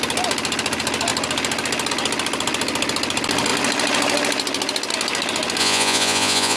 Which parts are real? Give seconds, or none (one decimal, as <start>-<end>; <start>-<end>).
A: 0.0-5.6